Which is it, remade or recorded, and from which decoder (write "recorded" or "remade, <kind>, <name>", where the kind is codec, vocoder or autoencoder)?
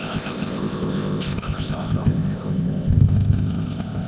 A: remade, codec, ZipCodec